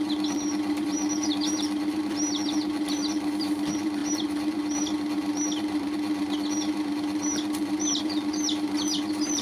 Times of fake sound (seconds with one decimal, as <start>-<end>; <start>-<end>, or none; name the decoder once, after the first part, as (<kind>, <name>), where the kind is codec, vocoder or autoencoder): 0.0-9.4 (vocoder, BigVGAN v2)